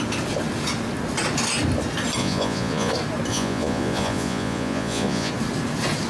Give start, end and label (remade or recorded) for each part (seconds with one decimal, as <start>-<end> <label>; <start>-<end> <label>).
0.0-2.2 recorded; 2.2-2.9 remade; 2.9-3.3 recorded; 3.3-5.3 remade; 5.3-6.1 recorded